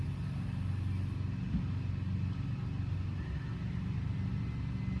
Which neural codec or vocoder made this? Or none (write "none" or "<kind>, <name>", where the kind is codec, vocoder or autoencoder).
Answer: none